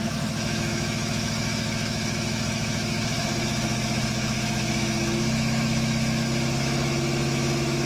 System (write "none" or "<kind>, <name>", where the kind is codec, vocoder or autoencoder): autoencoder, DAC-VAE